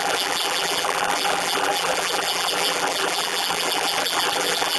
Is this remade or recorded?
remade